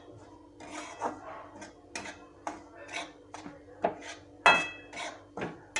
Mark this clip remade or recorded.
recorded